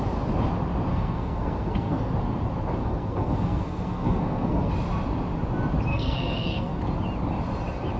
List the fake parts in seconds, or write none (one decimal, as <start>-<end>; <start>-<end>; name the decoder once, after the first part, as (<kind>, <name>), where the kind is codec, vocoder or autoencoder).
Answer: 0.9-2.1 (codec, SNAC); 2.8-4.7; 5.9-6.8